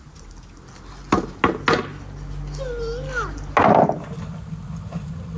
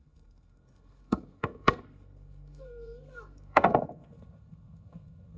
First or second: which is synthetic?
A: second